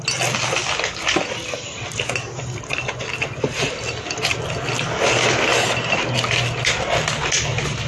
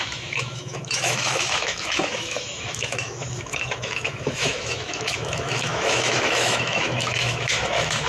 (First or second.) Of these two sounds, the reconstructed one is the second